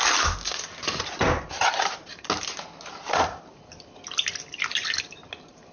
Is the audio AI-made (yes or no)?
no